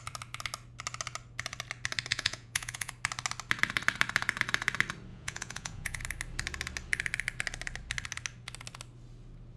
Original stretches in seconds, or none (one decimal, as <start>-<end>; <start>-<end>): 0.0-2.1; 2.9-5.1; 6.0-9.6